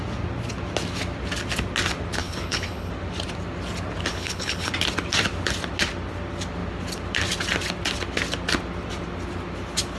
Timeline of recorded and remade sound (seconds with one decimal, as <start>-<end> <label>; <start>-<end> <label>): 0.0-2.2 recorded; 2.2-2.9 remade; 2.9-4.1 recorded; 4.1-4.7 remade; 4.7-10.0 recorded